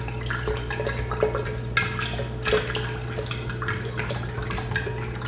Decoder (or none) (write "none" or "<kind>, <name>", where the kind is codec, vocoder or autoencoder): none